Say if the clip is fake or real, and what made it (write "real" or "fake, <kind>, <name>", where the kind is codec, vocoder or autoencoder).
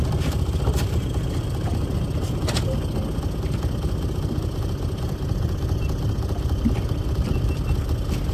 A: real